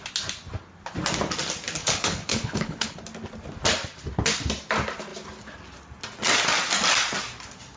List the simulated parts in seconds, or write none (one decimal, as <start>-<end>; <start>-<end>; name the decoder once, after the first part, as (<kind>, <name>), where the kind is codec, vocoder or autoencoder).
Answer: 1.8-3.0 (codec, HILCodec)